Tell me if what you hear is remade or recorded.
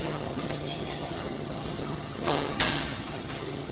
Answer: remade